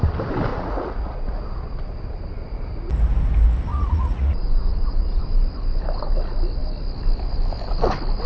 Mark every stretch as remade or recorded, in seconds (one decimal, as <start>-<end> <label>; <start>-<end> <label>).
0.0-0.5 recorded; 0.5-1.3 remade; 1.3-3.7 recorded; 3.7-5.2 remade; 5.2-8.3 recorded